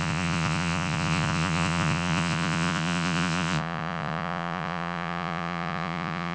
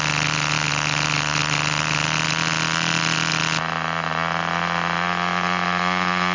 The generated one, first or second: first